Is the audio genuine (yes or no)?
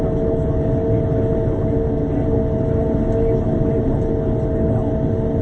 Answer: yes